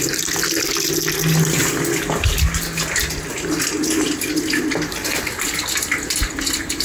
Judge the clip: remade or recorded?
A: recorded